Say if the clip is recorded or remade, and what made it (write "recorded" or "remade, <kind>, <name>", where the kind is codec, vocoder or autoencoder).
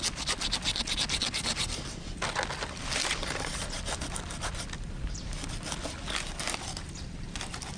recorded